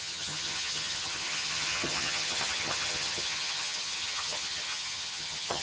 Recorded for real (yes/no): no